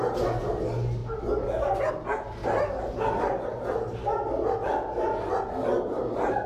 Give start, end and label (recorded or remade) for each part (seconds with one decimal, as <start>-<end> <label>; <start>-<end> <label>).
0.0-1.0 recorded; 1.0-1.9 remade; 1.9-6.5 recorded